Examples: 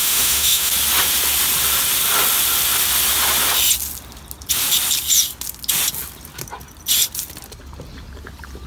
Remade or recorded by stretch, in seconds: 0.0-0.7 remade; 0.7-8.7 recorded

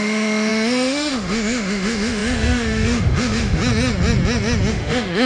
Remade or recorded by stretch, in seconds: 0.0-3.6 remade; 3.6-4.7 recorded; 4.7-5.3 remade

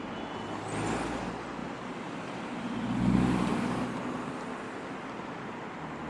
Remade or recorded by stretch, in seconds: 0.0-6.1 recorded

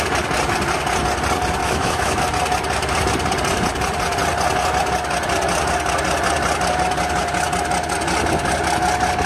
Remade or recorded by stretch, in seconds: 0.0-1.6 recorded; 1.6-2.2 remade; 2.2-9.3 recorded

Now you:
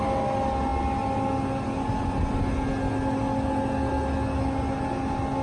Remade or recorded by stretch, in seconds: 0.0-5.4 recorded